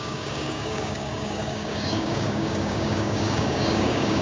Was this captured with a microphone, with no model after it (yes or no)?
no